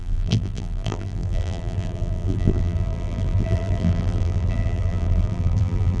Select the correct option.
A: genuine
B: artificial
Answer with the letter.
B